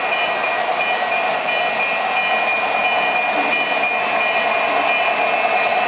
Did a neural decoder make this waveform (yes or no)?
no